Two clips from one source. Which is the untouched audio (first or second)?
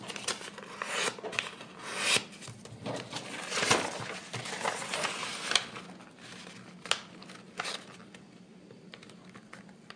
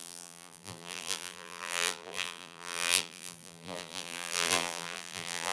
first